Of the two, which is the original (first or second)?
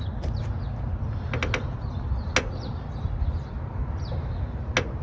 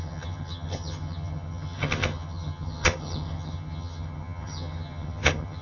first